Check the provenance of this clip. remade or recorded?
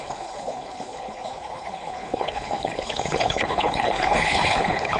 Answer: remade